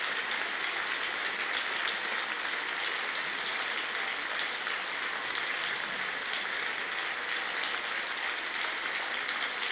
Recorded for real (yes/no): yes